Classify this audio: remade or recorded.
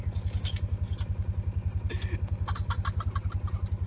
recorded